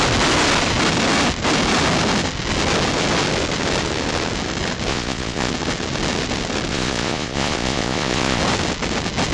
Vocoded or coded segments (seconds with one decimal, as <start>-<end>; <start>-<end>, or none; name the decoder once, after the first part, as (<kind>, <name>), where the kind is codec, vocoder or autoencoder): 4.9-5.5 (vocoder, Vocos); 6.7-8.4